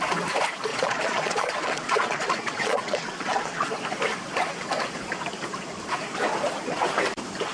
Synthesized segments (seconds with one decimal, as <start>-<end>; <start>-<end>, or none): 0.7-3.7